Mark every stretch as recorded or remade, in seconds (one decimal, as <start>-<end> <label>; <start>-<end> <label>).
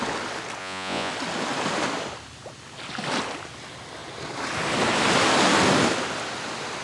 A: 0.0-0.6 recorded; 0.6-1.1 remade; 1.1-6.8 recorded